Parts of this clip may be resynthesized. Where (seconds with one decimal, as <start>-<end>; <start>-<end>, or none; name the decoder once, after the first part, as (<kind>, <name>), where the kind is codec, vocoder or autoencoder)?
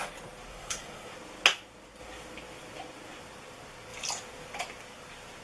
0.5-1.1 (codec, SNAC)